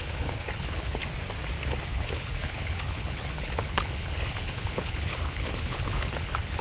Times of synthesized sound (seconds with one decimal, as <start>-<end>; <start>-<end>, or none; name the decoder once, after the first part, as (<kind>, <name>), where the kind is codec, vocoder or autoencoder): 0.0-1.0 (codec, HILCodec); 1.9-6.6

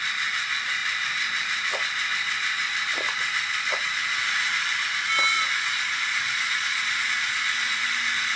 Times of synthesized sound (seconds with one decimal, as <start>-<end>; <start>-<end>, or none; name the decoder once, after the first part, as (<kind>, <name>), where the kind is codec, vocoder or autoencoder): 5.3-7.1 (vocoder, Vocos)